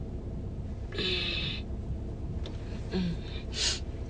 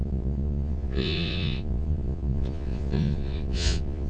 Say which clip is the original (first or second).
first